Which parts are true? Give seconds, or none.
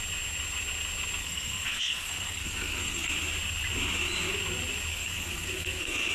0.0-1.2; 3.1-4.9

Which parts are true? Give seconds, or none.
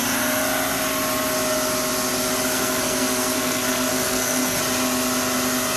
0.0-2.5; 4.6-5.8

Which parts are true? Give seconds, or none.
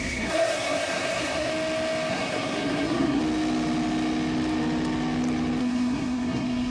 1.5-2.1; 3.2-5.6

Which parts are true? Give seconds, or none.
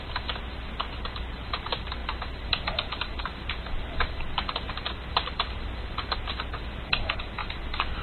0.0-8.0